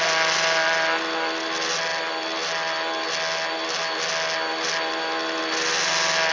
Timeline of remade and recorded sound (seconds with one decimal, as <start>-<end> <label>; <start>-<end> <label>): 0.0-6.3 recorded